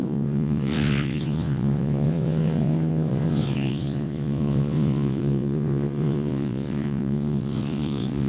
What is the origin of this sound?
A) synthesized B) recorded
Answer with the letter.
A